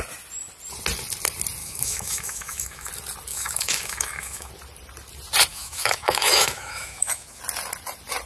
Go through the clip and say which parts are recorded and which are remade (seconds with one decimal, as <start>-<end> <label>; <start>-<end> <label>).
0.0-1.6 recorded; 1.6-2.9 remade; 2.9-3.3 recorded; 3.3-4.5 remade; 4.5-5.5 recorded; 5.5-7.4 remade; 7.4-8.3 recorded